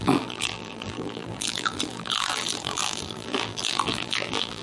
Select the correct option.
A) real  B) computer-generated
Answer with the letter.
B